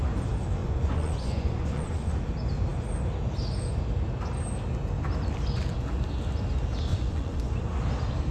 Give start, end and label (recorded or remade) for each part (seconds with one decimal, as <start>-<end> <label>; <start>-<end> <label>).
0.0-0.6 recorded; 0.6-2.2 remade; 2.2-6.9 recorded; 6.9-7.5 remade; 7.5-8.3 recorded